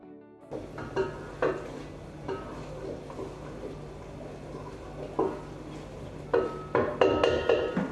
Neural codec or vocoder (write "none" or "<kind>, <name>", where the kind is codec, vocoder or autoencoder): none